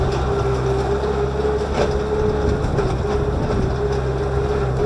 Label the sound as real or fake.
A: real